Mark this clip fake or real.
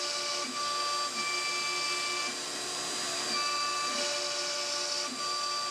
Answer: real